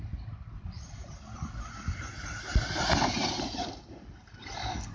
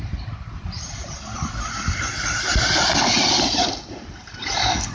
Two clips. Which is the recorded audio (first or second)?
first